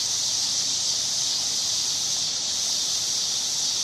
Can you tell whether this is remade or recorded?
remade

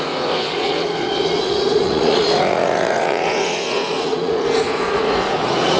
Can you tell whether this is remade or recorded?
remade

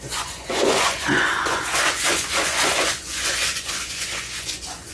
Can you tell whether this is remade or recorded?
remade